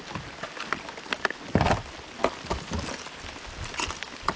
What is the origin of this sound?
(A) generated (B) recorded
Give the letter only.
B